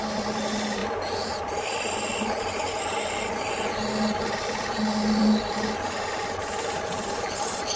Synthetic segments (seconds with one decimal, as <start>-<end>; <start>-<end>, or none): none